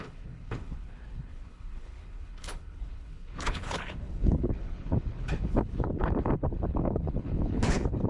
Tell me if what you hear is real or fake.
fake